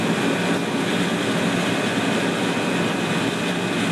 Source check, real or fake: real